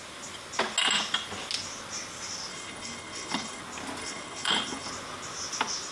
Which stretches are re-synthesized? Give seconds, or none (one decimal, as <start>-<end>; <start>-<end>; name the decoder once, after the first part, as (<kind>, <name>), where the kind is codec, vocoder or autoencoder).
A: 2.5-3.6 (codec, HILCodec); 4.0-4.9